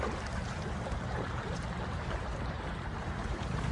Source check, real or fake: fake